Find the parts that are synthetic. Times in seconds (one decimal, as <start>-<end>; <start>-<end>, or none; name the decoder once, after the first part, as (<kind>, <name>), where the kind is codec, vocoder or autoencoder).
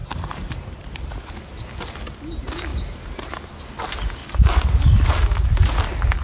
0.0-1.3 (vocoder, BigVGAN v2); 2.7-3.5; 4.2-4.7